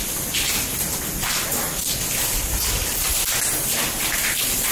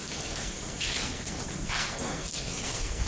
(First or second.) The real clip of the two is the first